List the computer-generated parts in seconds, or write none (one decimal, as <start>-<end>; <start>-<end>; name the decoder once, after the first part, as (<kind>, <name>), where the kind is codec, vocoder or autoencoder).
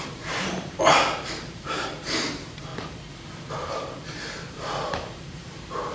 0.0-2.7 (vocoder, BigVGAN v2); 3.5-5.9